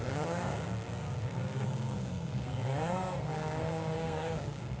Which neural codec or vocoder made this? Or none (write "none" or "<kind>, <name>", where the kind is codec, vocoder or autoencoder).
codec, SNAC